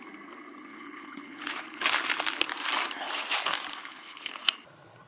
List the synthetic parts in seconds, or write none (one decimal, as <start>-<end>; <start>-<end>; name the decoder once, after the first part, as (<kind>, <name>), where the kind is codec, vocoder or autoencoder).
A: 0.7-1.5 (codec, HILCodec); 3.8-4.3